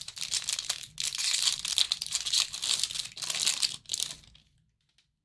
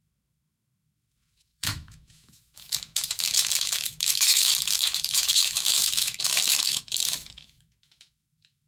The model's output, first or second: second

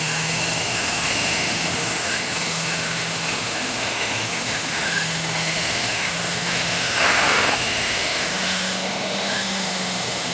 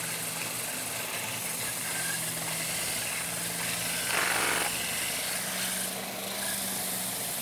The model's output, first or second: first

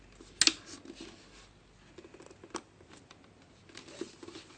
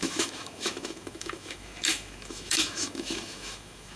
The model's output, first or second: second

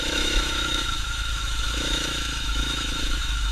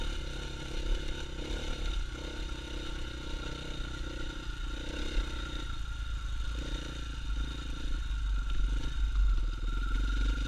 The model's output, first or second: first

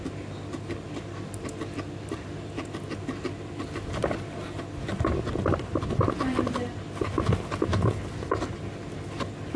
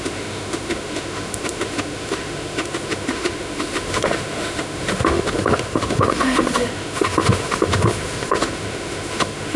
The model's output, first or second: second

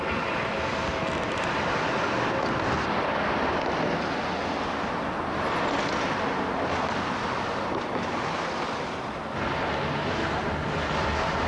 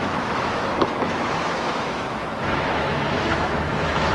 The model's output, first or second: second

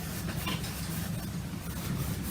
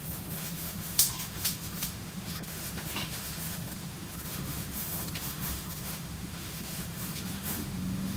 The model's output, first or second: second